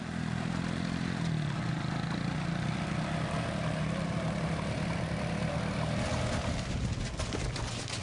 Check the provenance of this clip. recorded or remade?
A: recorded